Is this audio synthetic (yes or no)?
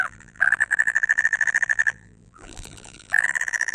yes